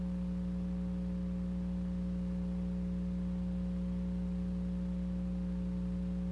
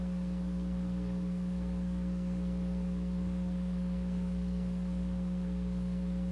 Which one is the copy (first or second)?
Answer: second